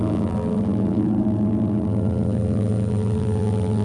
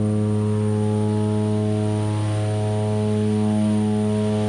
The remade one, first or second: first